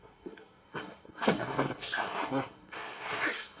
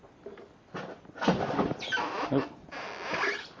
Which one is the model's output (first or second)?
first